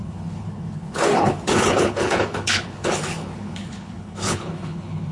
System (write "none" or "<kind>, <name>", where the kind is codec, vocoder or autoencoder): codec, HILCodec